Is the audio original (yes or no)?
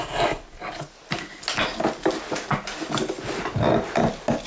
yes